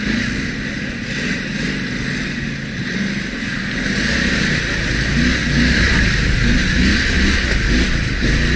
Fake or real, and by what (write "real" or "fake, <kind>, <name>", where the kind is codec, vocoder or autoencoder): real